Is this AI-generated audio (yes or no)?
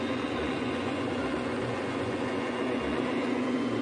yes